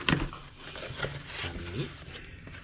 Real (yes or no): yes